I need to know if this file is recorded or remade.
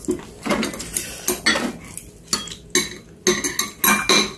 recorded